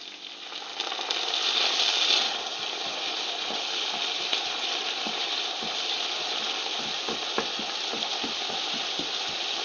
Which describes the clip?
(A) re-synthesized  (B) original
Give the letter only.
B